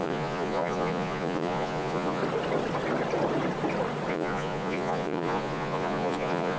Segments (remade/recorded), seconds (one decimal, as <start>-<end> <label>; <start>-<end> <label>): 0.0-2.2 remade; 2.2-4.1 recorded; 4.1-6.6 remade